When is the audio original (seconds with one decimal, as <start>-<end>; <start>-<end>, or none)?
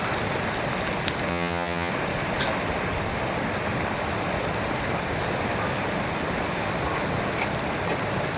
0.0-1.3; 1.9-8.4